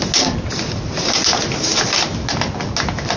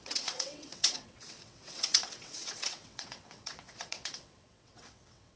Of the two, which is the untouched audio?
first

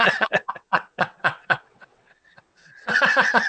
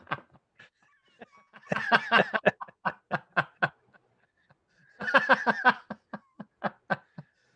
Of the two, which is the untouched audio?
second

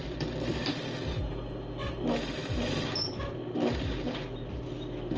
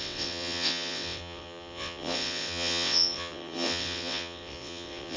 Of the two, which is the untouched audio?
first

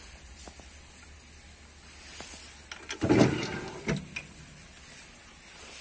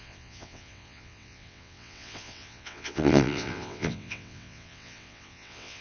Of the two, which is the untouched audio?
first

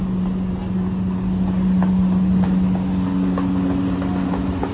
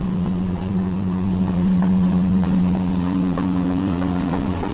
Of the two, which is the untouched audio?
first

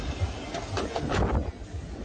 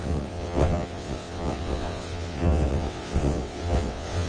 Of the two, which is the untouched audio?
first